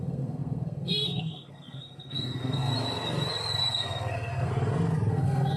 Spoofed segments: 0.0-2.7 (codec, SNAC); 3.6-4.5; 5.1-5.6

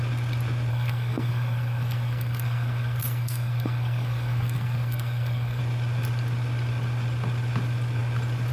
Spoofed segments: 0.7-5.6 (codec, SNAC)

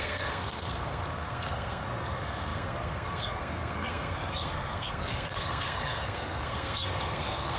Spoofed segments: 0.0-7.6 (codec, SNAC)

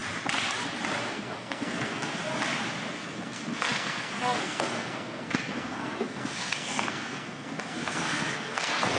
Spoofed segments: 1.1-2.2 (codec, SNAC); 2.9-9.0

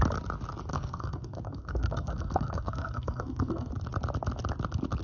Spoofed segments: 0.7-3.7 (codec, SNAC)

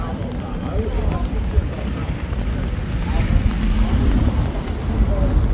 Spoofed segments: none